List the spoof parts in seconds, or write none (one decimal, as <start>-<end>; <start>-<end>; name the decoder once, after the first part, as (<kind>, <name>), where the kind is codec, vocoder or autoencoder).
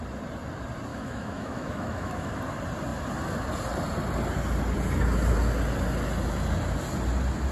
0.9-2.4 (autoencoder, DAC-VAE)